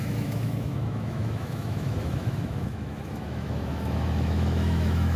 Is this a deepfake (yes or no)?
yes